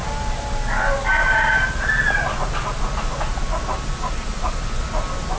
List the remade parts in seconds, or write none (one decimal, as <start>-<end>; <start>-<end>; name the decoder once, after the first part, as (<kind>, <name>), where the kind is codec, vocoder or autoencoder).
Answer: none